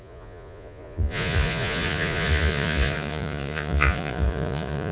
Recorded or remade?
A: remade